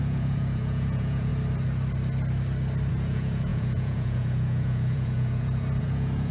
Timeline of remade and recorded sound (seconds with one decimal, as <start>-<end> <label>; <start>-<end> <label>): 0.0-1.3 remade; 1.3-2.9 recorded; 2.9-6.3 remade